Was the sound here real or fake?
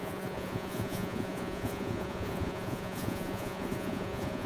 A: fake